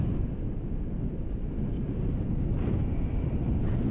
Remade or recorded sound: recorded